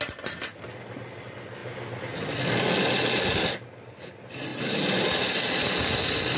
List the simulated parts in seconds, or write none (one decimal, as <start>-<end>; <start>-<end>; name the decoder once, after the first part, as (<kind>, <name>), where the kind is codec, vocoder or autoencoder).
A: none